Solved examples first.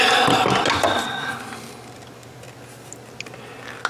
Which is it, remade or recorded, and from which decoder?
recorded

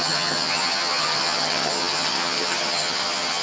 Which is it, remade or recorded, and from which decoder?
remade, vocoder, HiFi-GAN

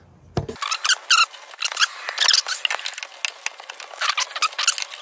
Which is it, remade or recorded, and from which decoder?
recorded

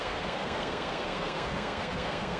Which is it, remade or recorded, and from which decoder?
remade, codec, SNAC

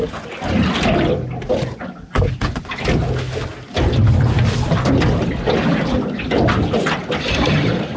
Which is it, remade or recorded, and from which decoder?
recorded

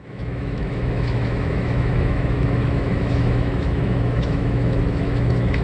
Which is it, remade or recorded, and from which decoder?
remade, autoencoder, DAC-VAE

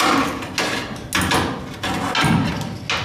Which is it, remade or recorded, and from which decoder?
recorded